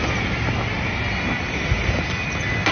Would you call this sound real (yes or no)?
yes